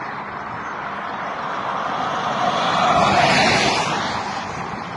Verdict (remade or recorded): recorded